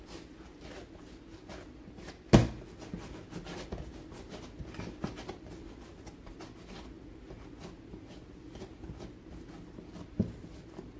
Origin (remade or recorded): recorded